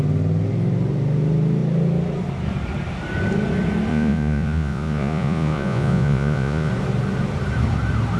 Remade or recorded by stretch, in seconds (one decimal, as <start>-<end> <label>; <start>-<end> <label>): 0.0-3.9 recorded; 3.9-6.7 remade; 6.7-8.2 recorded